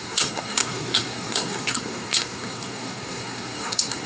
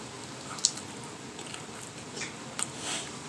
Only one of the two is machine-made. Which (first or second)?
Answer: first